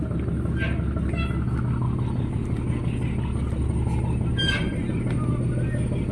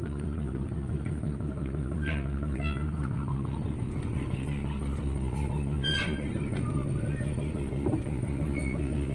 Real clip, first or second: first